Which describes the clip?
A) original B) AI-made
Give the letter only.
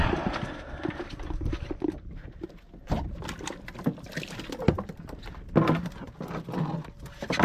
A